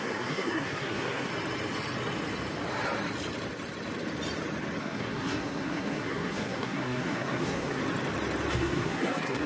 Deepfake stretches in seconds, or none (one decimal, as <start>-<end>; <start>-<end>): 0.0-1.3; 4.8-7.8; 8.5-9.5